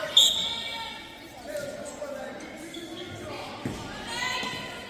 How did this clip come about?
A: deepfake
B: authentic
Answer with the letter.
B